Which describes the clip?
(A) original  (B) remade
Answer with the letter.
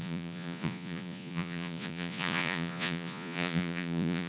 B